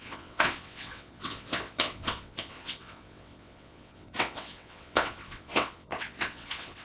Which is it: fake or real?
fake